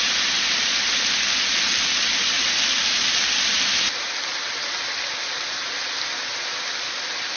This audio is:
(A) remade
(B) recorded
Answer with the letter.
B